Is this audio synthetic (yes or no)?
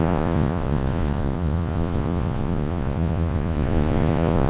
yes